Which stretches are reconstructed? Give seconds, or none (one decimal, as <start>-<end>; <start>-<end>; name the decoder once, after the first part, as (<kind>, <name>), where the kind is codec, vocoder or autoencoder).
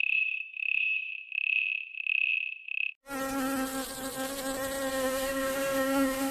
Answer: 0.0-1.1 (autoencoder, DAC-VAE); 4.9-6.3